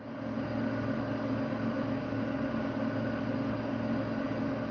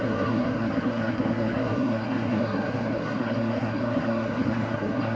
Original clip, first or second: first